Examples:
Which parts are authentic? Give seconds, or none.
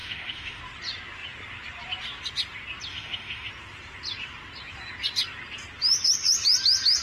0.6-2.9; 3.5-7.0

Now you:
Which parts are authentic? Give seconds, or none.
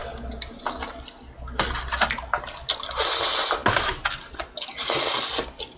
0.0-5.8